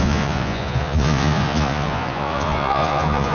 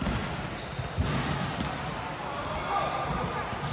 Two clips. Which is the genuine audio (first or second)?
second